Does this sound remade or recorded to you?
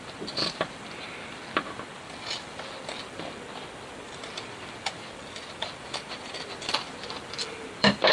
remade